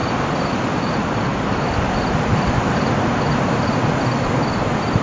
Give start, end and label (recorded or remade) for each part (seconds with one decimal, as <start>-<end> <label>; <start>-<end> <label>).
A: 0.0-0.5 recorded; 0.5-5.0 remade